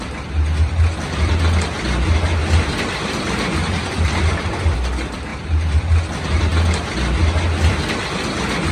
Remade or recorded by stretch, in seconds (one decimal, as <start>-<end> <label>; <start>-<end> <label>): 0.0-2.4 recorded; 2.4-3.9 remade; 3.9-5.3 recorded; 5.3-5.8 remade; 5.8-8.7 recorded